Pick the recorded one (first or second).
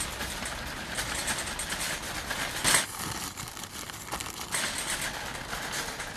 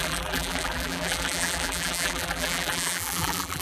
first